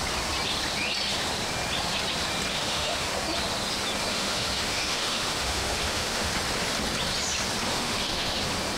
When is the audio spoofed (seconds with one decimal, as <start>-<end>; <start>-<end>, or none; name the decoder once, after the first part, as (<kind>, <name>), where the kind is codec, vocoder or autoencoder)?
2.5-3.1 (autoencoder, DAC-VAE); 4.1-6.3; 7.7-8.4